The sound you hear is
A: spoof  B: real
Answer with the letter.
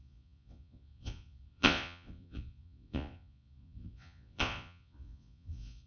A